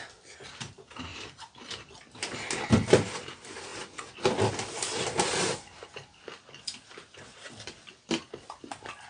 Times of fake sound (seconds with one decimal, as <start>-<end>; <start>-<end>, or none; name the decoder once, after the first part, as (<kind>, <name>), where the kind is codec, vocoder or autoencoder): 1.1-2.6 (vocoder, BigVGAN v2)